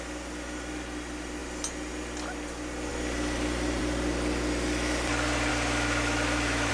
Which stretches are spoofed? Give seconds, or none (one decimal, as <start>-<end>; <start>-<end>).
5.5-6.7

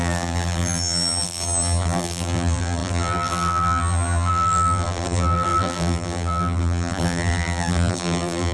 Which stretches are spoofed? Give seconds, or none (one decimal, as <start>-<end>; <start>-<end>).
0.0-8.5

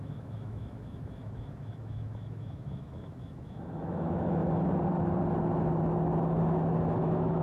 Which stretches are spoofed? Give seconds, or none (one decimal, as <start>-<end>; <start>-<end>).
0.0-4.4; 7.0-7.4

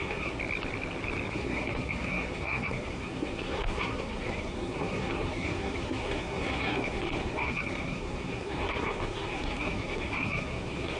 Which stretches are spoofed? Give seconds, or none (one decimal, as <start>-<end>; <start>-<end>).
0.0-0.4; 1.3-11.0

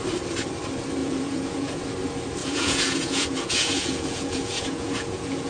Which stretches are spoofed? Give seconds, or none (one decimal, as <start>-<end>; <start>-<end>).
1.0-1.8; 2.4-5.5

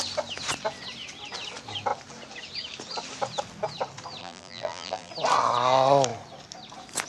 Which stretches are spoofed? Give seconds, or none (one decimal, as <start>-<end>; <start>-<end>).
4.2-5.1

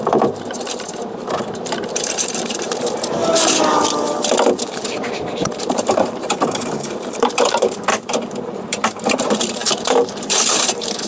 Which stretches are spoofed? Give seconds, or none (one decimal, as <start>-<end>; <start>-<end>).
0.0-3.2; 4.5-11.1

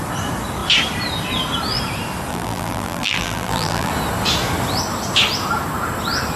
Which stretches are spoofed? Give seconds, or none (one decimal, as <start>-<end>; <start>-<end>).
2.3-3.9